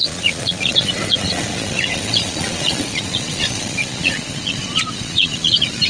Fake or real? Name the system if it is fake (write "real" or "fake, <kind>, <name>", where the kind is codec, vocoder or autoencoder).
fake, vocoder, Vocos